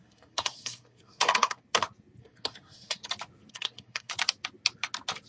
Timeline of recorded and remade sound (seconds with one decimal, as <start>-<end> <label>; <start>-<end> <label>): 0.0-1.6 remade; 1.6-2.2 recorded; 2.2-3.0 remade; 3.0-3.5 recorded; 3.5-4.1 remade; 4.1-5.3 recorded